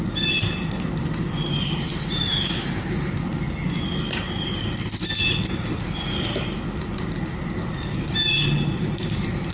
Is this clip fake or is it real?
real